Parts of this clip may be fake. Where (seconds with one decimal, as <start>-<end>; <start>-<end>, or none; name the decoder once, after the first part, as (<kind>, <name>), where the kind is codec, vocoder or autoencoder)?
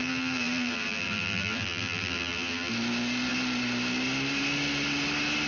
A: 0.0-2.7 (vocoder, BigVGAN v2)